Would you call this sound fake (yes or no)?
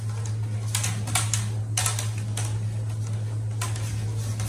no